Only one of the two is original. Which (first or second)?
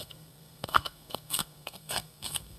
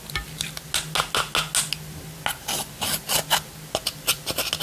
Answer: second